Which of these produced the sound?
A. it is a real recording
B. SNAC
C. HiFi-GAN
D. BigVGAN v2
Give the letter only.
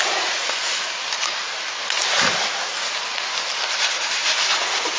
A